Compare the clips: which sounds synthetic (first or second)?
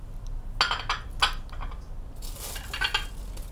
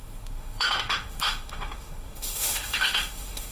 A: second